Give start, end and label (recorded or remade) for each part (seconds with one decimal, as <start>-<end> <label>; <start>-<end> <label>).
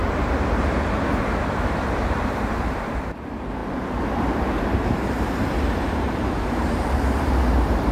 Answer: 0.0-1.7 recorded; 1.7-7.9 remade